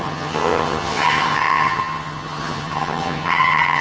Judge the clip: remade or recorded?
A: remade